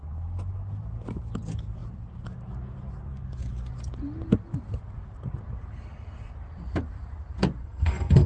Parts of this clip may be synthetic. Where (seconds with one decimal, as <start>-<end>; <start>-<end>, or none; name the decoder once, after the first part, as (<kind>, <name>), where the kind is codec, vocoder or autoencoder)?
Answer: 7.6-8.3 (codec, SNAC)